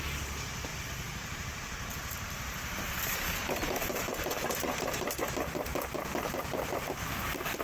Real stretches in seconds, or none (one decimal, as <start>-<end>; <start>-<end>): 0.0-0.7; 5.2-7.6